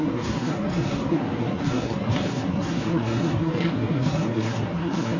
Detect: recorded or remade remade